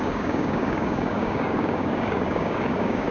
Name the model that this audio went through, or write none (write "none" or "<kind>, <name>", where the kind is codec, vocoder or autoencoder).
codec, DAC